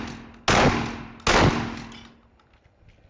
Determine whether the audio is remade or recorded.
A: recorded